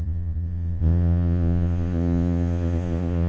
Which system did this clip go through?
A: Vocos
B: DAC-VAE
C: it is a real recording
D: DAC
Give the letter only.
A